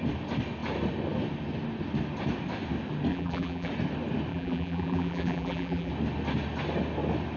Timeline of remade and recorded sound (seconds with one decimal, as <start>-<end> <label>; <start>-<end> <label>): 0.0-3.1 recorded; 3.1-3.7 remade; 3.7-4.3 recorded; 4.3-5.9 remade; 5.9-7.4 recorded